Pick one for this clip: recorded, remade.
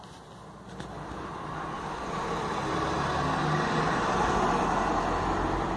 recorded